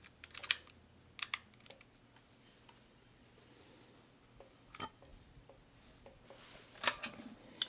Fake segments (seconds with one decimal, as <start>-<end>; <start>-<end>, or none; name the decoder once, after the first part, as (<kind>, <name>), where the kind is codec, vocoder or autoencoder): none